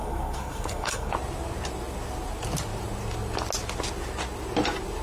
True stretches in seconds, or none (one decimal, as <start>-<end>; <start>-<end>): 1.1-5.0